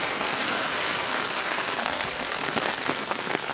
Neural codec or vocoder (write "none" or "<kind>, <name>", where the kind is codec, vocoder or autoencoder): codec, SNAC